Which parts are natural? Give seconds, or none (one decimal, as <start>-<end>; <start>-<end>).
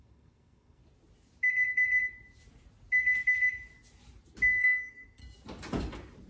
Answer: 0.8-4.6; 5.2-6.3